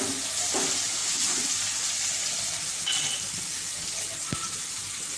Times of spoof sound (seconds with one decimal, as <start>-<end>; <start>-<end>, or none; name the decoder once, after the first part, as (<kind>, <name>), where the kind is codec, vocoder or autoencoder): none